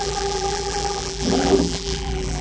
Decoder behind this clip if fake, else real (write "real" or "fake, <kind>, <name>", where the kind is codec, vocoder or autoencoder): fake, vocoder, BigVGAN v2